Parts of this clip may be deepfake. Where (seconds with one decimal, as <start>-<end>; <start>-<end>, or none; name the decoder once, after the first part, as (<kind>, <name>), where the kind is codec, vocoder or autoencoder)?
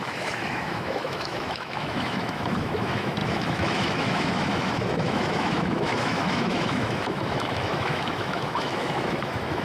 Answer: 0.0-9.6 (autoencoder, DAC-VAE)